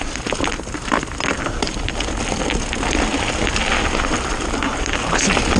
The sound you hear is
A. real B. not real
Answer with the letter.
A